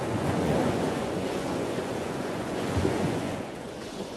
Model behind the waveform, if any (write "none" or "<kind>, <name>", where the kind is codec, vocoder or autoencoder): vocoder, Vocos